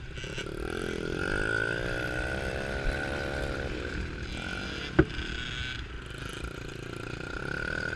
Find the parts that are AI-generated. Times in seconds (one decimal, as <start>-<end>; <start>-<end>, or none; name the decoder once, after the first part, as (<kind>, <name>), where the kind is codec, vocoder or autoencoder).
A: none